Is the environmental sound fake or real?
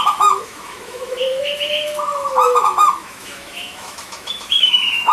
fake